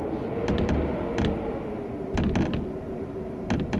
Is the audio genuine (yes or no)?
yes